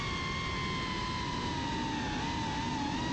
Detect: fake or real real